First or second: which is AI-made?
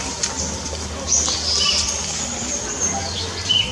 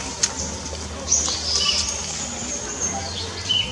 first